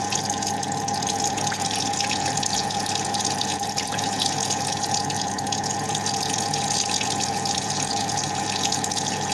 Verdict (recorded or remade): remade